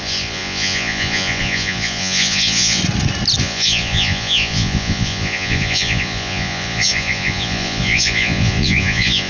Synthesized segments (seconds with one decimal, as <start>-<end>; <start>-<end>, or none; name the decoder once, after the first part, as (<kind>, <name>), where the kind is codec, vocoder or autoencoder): 0.0-2.8 (vocoder, Vocos); 3.4-9.3